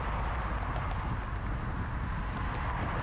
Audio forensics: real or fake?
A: real